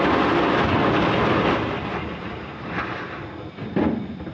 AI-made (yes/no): no